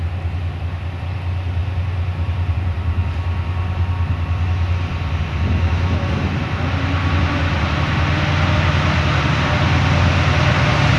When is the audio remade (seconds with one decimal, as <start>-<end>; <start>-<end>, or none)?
none